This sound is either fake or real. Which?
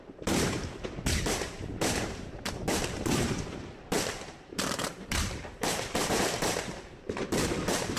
fake